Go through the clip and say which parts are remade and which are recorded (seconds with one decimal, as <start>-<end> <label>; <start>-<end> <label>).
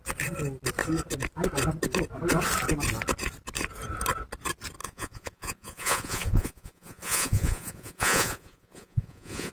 0.0-4.8 recorded; 4.8-9.5 remade